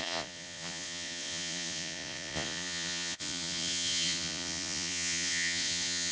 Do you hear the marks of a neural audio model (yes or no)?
yes